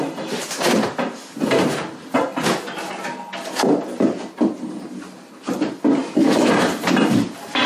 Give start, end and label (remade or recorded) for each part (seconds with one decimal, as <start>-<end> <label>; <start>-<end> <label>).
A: 0.0-6.0 recorded; 6.0-6.5 remade; 6.5-7.7 recorded